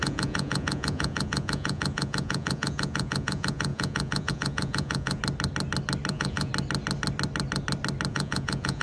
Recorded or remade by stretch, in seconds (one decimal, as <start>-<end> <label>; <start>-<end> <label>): 0.0-5.2 remade; 5.2-6.1 recorded; 6.1-6.5 remade; 6.5-8.1 recorded; 8.1-8.8 remade